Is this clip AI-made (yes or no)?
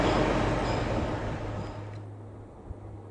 no